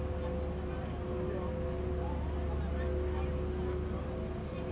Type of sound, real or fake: real